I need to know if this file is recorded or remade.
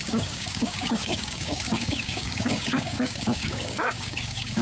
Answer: remade